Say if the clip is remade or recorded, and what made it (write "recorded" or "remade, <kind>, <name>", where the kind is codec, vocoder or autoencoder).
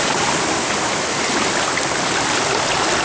recorded